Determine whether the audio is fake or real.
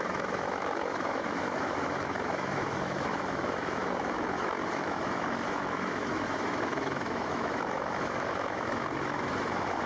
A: fake